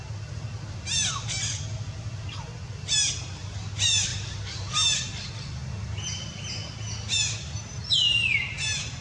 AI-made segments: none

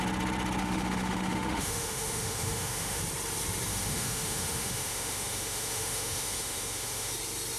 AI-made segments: 0.6-3.0 (autoencoder, DAC-VAE); 3.7-7.1

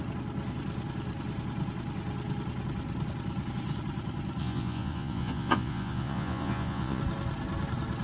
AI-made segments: 4.4-7.0 (vocoder, Vocos)

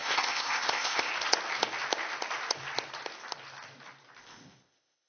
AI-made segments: 0.0-1.1 (codec, ZipCodec); 4.2-5.1

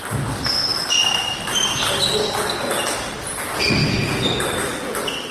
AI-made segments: 0.7-1.9 (vocoder, BigVGAN v2); 3.8-4.8

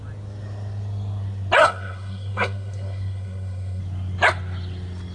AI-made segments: 1.6-3.8 (codec, SNAC)

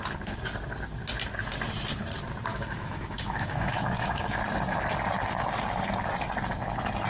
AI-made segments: 2.5-4.4 (autoencoder, DAC-VAE)